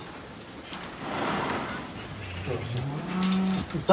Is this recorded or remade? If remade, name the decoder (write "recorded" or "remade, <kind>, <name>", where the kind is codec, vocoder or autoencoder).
recorded